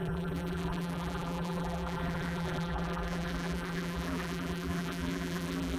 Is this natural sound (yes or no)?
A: no